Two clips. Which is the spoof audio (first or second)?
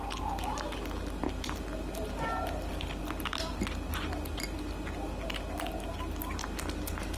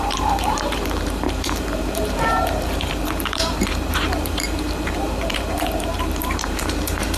second